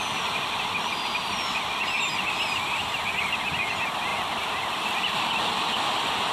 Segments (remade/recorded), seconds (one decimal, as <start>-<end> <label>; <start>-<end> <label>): 0.0-6.3 remade